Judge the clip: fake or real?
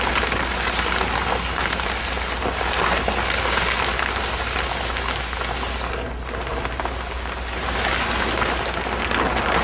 real